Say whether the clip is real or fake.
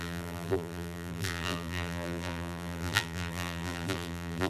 fake